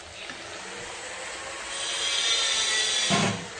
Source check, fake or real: real